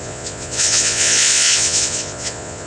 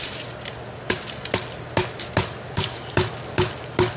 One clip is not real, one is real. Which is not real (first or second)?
first